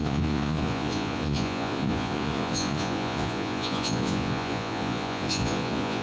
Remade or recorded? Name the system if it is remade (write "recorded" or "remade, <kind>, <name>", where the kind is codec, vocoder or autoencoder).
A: remade, vocoder, Vocos